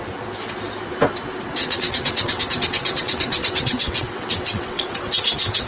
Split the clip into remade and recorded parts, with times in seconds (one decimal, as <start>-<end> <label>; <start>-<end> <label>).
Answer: 0.0-1.6 recorded; 1.6-2.4 remade; 2.4-2.8 recorded; 2.8-4.9 remade; 4.9-5.7 recorded